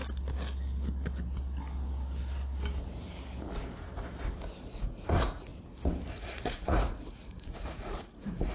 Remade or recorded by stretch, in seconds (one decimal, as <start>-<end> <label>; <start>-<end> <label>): 0.0-4.6 recorded; 4.6-5.5 remade; 5.5-6.1 recorded; 6.1-8.5 remade